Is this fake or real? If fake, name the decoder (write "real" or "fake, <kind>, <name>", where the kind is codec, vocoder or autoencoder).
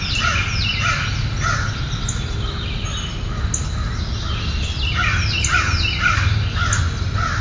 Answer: real